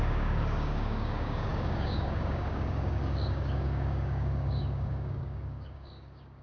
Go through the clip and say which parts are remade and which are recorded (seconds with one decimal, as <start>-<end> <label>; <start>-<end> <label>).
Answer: 0.0-6.4 remade